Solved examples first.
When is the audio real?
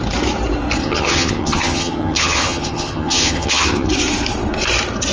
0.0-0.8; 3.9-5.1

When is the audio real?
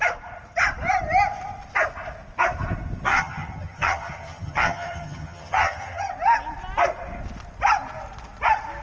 0.0-3.1; 6.1-8.8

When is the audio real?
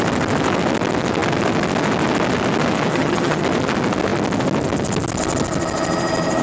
0.0-2.9; 3.4-6.4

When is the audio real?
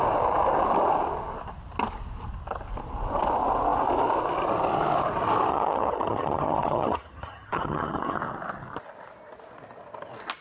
0.0-5.5; 8.2-10.4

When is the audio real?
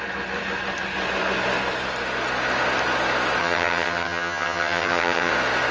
0.0-3.4; 5.3-5.7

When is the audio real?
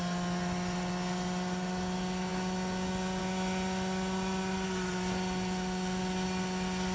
0.0-6.9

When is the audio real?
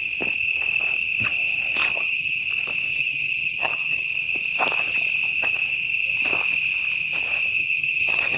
0.0-1.8; 2.4-2.9; 4.1-7.6